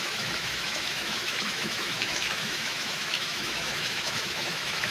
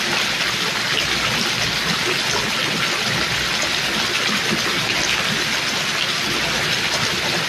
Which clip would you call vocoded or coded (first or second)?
first